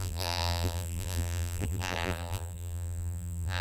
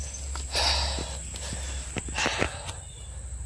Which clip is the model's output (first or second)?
first